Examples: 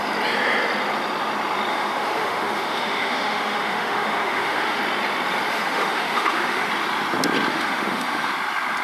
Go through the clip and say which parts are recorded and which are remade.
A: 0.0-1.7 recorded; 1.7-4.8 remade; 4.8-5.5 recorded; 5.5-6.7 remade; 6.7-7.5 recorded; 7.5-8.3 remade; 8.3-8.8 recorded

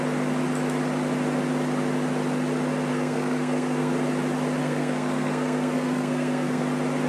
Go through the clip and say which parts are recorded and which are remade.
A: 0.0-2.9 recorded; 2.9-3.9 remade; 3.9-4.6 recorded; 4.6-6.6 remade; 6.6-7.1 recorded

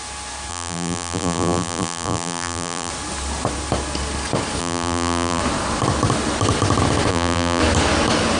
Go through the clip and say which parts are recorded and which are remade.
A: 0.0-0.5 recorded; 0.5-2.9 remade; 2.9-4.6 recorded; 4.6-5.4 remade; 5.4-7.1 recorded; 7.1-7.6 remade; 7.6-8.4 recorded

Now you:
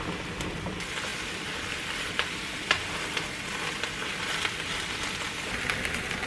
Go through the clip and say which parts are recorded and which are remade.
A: 0.0-6.3 recorded